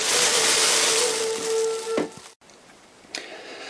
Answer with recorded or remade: recorded